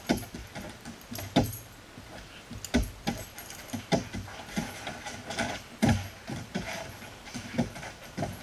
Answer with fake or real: real